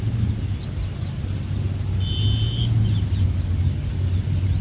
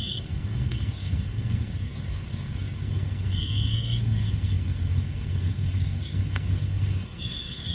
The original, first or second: first